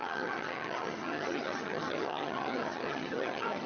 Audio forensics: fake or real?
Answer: fake